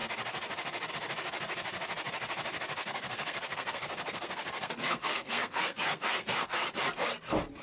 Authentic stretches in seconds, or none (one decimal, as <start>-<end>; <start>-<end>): 0.0-2.8; 6.7-7.6